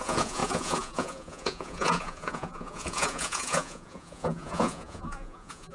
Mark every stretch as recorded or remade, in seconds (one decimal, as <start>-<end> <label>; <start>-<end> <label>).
0.0-5.7 remade